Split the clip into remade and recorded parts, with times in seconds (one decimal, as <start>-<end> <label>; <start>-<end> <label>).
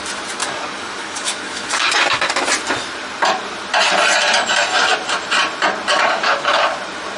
0.0-0.4 recorded; 0.4-2.3 remade; 2.3-5.9 recorded; 5.9-6.7 remade; 6.7-7.2 recorded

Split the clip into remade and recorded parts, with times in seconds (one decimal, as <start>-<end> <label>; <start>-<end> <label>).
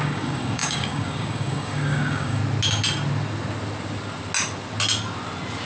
0.0-2.4 remade; 2.4-5.7 recorded